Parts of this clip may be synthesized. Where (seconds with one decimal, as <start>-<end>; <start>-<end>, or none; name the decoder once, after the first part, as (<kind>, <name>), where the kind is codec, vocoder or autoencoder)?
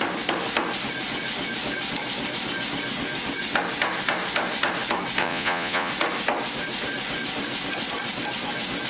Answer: 5.2-5.9 (vocoder, Vocos)